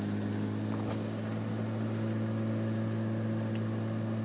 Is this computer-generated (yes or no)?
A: no